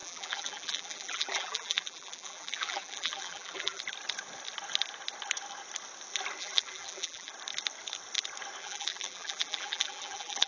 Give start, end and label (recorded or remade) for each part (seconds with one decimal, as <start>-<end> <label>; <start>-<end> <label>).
0.0-3.8 remade; 3.8-6.4 recorded; 6.4-7.3 remade; 7.3-8.6 recorded; 8.6-10.5 remade